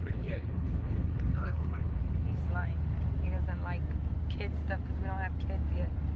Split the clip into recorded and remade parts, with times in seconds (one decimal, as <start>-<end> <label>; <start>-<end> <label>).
0.0-2.4 remade; 2.4-6.2 recorded